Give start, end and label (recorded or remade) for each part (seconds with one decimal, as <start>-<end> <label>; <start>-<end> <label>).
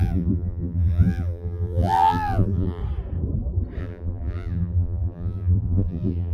0.0-2.8 remade; 2.8-3.8 recorded; 3.8-6.3 remade